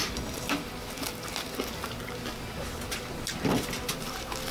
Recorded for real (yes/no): yes